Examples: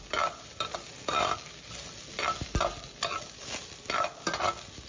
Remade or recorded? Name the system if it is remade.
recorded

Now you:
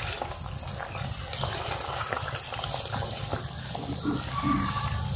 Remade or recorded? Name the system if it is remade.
recorded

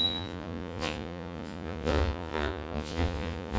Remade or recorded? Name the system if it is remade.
remade, vocoder, Vocos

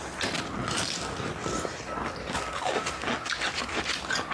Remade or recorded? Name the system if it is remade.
recorded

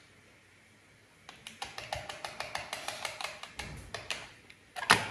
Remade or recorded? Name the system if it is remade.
recorded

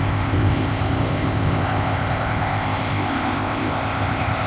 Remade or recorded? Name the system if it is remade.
remade, codec, ZipCodec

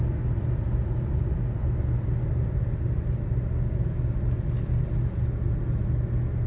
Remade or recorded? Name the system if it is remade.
recorded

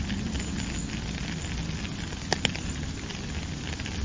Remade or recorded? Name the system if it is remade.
recorded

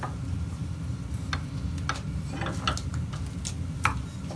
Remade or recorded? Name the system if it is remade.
recorded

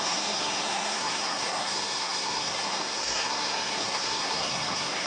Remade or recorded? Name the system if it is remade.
remade, codec, SNAC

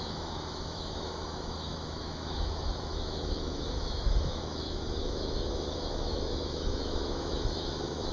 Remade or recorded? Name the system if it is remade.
remade, autoencoder, DAC-VAE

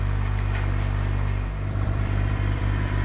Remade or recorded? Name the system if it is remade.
remade, vocoder, BigVGAN v2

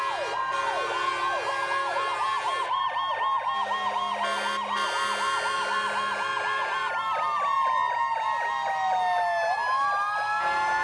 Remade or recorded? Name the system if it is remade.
recorded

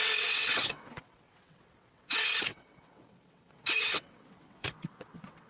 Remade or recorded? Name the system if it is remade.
remade, vocoder, WaveNeXt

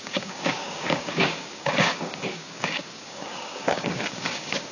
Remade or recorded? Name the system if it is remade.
remade, codec, DAC